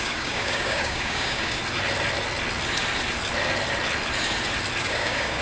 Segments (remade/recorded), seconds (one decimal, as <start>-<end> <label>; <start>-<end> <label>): 0.0-1.6 remade; 1.6-4.8 recorded; 4.8-5.4 remade